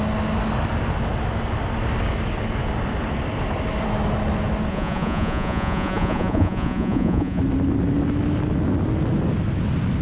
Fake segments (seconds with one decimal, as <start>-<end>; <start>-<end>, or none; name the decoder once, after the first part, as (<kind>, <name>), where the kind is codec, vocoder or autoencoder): 4.7-7.4 (vocoder, Vocos)